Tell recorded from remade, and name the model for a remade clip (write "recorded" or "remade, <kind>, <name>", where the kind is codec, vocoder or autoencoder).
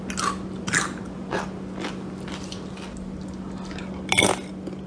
recorded